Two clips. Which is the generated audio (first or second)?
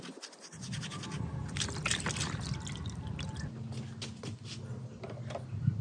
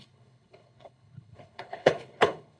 second